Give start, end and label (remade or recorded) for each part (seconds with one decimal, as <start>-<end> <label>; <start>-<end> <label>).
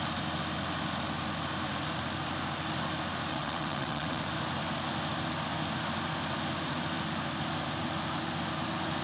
0.0-3.3 recorded; 3.3-4.2 remade; 4.2-9.0 recorded